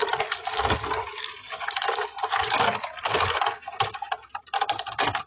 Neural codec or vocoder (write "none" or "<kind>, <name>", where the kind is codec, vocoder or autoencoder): none